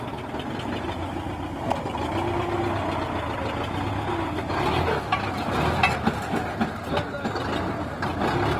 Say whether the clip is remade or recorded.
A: recorded